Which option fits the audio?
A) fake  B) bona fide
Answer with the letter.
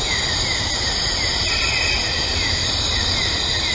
B